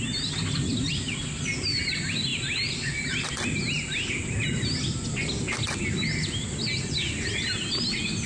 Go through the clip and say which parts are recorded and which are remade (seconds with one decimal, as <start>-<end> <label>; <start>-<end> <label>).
0.0-8.3 recorded